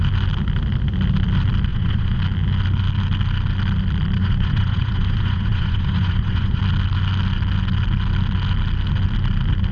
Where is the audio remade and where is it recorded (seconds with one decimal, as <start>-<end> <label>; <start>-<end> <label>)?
0.0-1.7 recorded; 1.7-2.2 remade; 2.2-4.2 recorded; 4.2-6.6 remade; 6.6-9.7 recorded